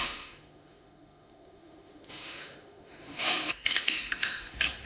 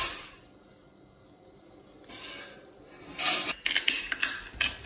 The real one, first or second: second